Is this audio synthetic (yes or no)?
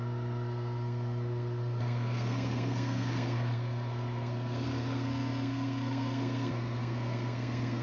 yes